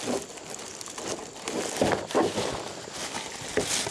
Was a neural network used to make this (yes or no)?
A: no